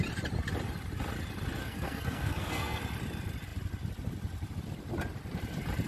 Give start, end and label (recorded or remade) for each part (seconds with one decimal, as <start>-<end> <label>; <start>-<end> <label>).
0.0-1.6 recorded; 1.6-2.8 remade; 2.8-5.9 recorded